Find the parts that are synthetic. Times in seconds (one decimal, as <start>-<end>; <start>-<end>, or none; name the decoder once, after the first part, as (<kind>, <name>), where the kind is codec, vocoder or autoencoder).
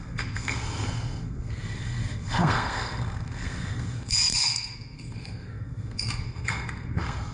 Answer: 0.0-7.3 (codec, SNAC)